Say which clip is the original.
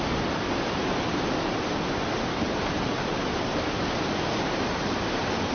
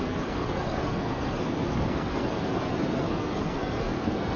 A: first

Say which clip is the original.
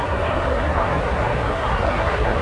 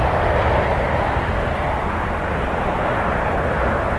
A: second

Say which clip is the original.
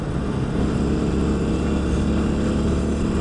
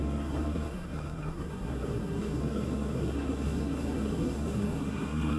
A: first